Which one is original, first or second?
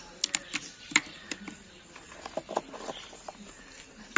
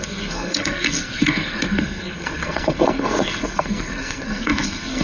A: first